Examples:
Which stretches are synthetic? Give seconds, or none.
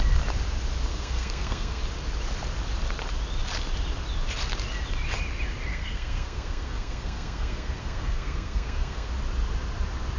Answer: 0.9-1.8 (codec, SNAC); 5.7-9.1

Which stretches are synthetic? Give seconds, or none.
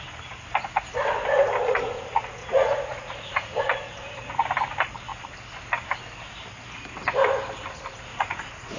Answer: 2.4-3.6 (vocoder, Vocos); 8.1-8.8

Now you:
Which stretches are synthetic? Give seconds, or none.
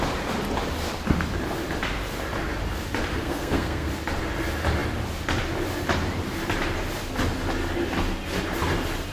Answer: 3.1-3.9 (codec, SNAC)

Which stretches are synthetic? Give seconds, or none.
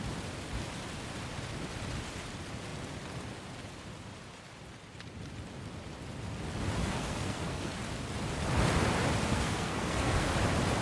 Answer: 6.8-7.8 (codec, SNAC); 9.3-10.3